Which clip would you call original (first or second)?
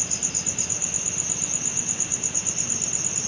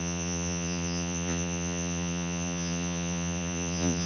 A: first